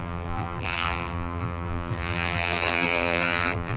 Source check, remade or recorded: remade